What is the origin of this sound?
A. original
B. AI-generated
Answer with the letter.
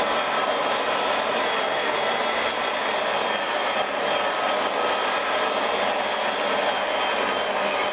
A